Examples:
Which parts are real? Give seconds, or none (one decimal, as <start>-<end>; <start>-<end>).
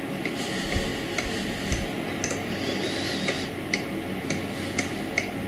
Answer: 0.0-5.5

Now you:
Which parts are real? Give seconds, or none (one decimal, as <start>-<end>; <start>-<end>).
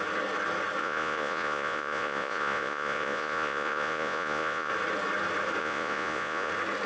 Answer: 0.0-0.8; 4.7-5.6; 6.5-6.9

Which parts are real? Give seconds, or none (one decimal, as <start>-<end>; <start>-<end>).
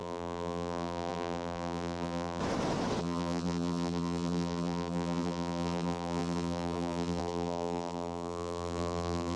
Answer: 2.4-3.0